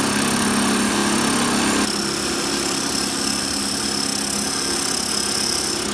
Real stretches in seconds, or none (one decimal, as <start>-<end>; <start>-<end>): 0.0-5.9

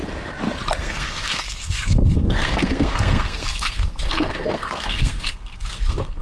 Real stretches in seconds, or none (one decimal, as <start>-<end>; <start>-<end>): 0.0-0.8

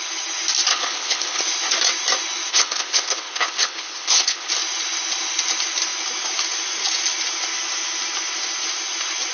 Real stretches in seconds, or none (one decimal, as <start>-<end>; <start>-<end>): 0.0-0.7; 1.4-2.5; 4.5-9.3

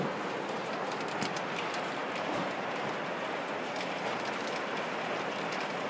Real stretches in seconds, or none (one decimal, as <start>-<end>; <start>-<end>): 0.0-5.9

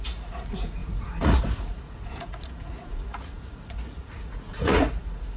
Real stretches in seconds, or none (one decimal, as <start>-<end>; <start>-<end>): none

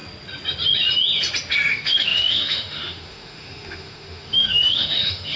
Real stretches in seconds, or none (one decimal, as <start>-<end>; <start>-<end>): 0.0-1.7